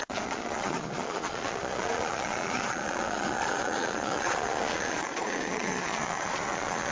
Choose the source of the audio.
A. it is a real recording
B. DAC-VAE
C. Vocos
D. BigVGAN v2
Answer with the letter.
C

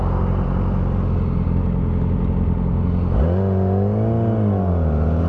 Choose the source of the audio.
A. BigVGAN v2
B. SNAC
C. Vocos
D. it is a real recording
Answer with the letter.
D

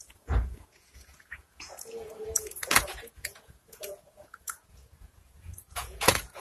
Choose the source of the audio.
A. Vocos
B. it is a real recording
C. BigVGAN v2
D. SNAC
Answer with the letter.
A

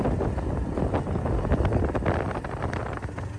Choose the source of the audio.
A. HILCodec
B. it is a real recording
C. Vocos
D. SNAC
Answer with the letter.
B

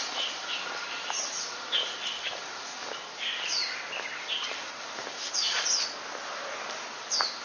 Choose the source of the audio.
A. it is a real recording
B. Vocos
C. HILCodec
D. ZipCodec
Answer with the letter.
A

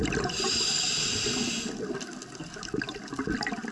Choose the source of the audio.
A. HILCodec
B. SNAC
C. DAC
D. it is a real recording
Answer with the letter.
D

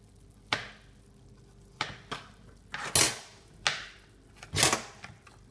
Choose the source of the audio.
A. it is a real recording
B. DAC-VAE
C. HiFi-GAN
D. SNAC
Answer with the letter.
A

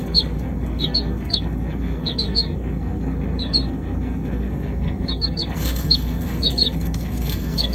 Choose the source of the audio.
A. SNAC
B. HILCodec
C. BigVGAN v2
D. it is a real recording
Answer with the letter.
A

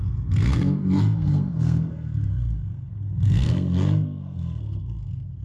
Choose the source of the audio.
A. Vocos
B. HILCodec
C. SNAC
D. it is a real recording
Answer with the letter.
C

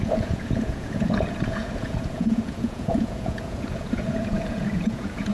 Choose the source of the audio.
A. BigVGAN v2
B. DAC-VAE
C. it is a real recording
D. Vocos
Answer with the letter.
D